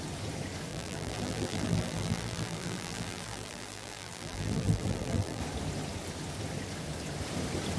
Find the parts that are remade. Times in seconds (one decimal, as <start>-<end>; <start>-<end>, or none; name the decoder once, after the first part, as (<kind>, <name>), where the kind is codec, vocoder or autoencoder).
0.7-5.4 (vocoder, BigVGAN v2)